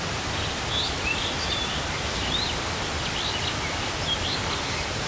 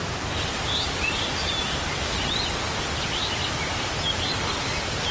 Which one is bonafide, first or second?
first